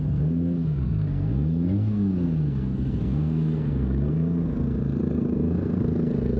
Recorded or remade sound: remade